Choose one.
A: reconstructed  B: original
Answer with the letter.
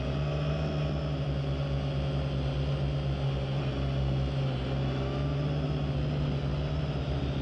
B